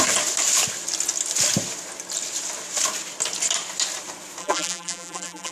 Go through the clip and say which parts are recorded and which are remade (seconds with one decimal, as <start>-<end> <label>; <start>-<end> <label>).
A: 0.0-4.4 recorded; 4.4-5.5 remade